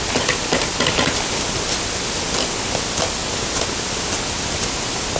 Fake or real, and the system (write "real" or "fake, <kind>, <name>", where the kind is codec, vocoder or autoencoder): real